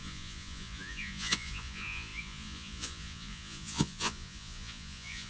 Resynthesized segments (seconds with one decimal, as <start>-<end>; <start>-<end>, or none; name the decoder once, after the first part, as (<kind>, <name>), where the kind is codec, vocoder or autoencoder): 0.0-5.3 (vocoder, Vocos)